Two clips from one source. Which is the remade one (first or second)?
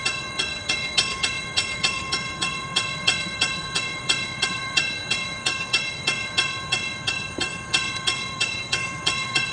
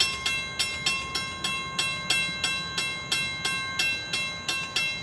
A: first